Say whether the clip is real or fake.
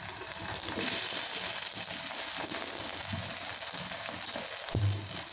real